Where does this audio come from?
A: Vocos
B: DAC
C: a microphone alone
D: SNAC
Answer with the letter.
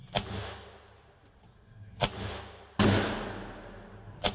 C